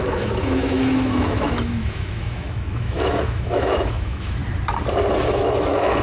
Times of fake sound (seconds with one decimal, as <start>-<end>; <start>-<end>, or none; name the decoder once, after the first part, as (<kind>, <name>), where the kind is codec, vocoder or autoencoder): 0.0-4.4 (autoencoder, DAC-VAE); 5.3-6.0